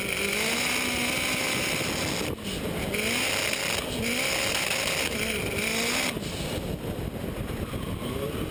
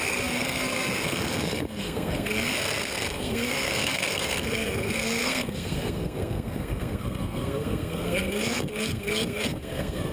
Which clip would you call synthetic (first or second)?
second